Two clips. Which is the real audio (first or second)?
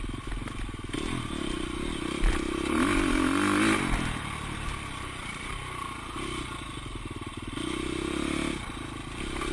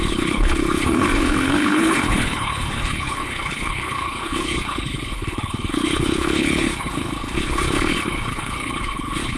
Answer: first